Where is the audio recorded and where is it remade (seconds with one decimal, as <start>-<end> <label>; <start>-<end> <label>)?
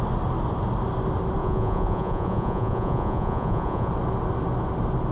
0.0-1.4 recorded; 1.4-3.9 remade; 3.9-5.1 recorded